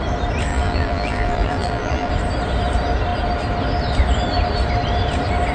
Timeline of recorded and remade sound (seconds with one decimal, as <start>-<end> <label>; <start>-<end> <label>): 0.0-0.5 recorded; 0.5-2.1 remade; 2.1-5.5 recorded